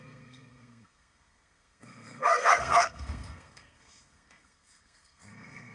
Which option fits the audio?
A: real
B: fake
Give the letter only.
B